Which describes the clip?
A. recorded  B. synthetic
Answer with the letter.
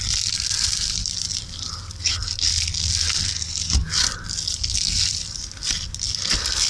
A